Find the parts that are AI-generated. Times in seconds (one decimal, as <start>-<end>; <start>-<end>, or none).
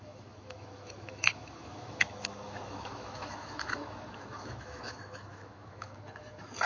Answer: 0.0-6.7